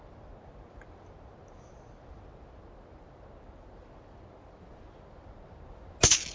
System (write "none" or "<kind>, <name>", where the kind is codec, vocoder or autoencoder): none